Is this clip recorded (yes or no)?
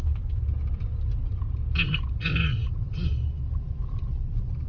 yes